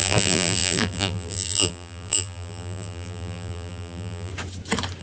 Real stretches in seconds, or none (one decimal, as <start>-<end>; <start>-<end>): 4.3-5.0